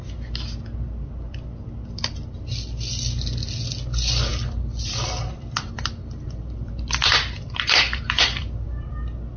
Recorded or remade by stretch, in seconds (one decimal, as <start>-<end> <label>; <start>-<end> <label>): 0.0-4.3 recorded; 4.3-8.9 remade; 8.9-9.4 recorded